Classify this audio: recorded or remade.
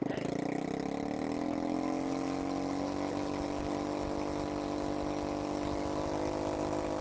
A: recorded